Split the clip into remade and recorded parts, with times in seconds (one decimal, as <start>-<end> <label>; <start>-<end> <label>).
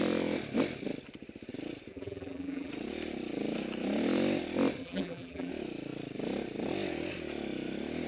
0.0-1.9 recorded; 1.9-2.7 remade; 2.7-4.8 recorded; 4.8-5.5 remade; 5.5-8.1 recorded